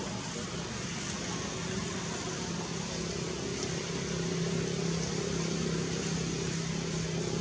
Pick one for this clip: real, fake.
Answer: real